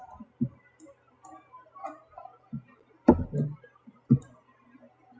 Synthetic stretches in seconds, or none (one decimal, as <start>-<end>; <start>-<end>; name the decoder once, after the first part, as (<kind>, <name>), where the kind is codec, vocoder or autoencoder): none